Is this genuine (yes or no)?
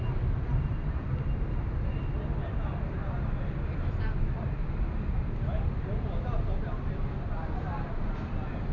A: yes